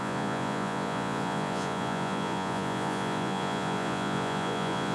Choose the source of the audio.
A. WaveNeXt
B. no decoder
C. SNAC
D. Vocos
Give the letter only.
D